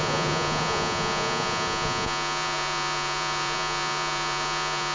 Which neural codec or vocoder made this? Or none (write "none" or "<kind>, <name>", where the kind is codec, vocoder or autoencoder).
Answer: vocoder, Vocos